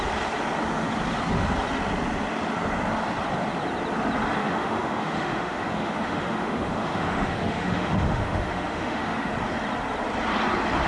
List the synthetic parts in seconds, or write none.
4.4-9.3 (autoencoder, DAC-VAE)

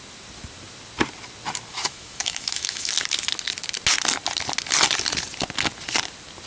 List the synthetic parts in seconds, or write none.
1.7-2.9 (autoencoder, DAC-VAE)

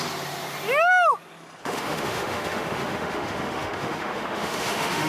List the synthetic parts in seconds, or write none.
1.6-5.1 (autoencoder, DAC-VAE)

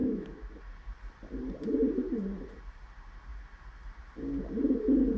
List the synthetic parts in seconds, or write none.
0.0-0.6 (autoencoder, DAC-VAE)

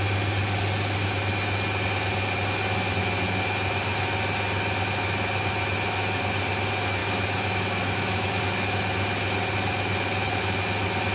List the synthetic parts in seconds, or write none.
7.0-8.4 (autoencoder, DAC-VAE)

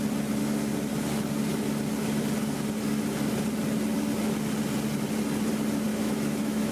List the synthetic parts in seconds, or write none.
5.9-6.7 (autoencoder, DAC-VAE)

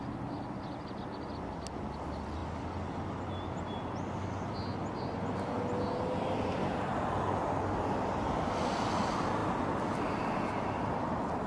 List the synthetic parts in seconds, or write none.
none

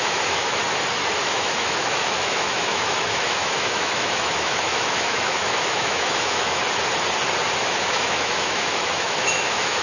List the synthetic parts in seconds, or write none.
0.0-0.6 (autoencoder, DAC-VAE); 1.2-6.6; 7.7-9.8